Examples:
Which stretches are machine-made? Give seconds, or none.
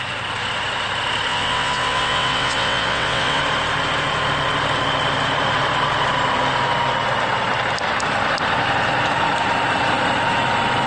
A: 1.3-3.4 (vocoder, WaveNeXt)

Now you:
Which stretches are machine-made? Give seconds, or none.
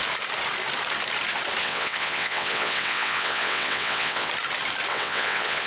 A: 1.6-4.3 (vocoder, WaveNeXt); 4.9-5.7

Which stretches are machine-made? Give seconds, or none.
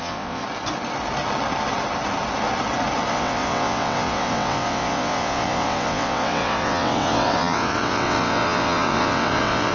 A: 0.0-0.4 (vocoder, WaveNeXt); 3.1-9.7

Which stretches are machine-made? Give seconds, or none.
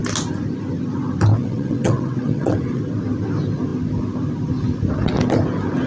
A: 1.3-2.8 (vocoder, WaveNeXt)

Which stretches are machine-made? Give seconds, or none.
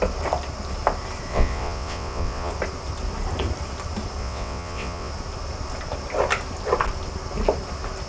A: 1.3-2.5 (vocoder, WaveNeXt); 4.2-5.1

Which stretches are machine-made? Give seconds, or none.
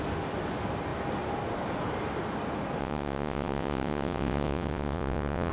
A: 2.8-5.5 (vocoder, WaveNeXt)